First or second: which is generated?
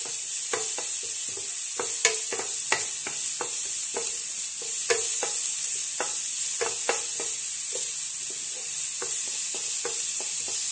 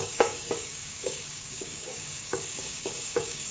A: second